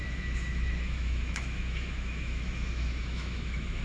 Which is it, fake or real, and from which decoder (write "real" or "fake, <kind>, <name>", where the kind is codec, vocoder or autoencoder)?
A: fake, autoencoder, DAC-VAE